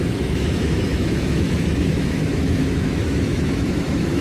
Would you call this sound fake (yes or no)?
yes